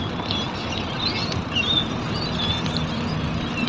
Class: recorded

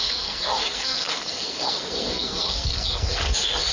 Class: remade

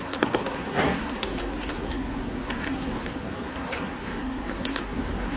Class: remade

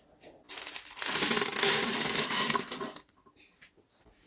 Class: recorded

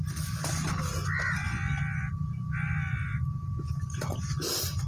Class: recorded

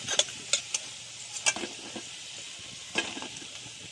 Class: recorded